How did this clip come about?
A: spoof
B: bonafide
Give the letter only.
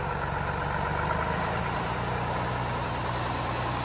B